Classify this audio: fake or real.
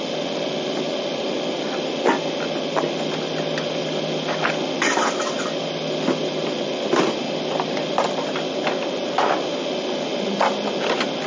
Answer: real